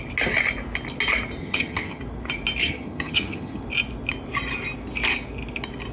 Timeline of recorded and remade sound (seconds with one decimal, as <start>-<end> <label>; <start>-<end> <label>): 0.0-1.4 recorded; 1.4-2.0 remade; 2.0-2.6 recorded; 2.6-3.6 remade; 3.6-5.9 recorded